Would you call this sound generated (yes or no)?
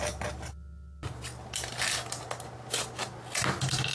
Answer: no